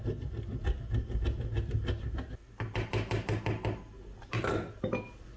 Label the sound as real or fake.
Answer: real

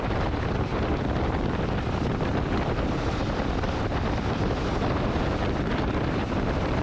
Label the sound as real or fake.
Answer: fake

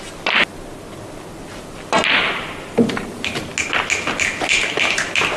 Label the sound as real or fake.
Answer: real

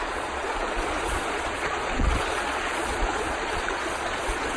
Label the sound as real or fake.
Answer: fake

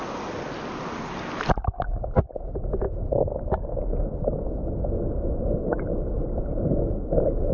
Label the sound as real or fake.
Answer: real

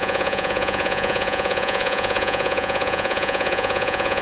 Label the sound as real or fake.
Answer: fake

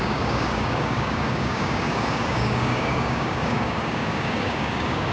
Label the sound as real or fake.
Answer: fake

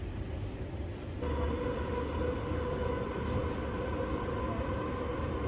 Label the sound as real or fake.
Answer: real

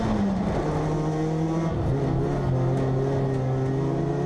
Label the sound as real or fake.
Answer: real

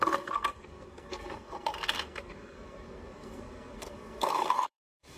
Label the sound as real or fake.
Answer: fake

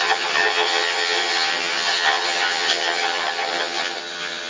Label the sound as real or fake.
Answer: fake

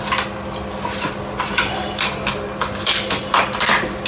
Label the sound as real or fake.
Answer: real